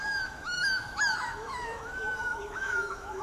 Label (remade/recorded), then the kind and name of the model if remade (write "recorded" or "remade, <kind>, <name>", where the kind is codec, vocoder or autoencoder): remade, autoencoder, DAC-VAE